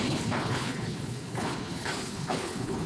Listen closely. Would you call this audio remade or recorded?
remade